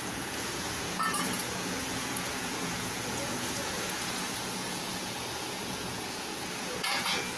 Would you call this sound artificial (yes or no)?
yes